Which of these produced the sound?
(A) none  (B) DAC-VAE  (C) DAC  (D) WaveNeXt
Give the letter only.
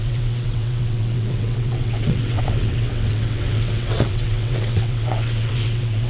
D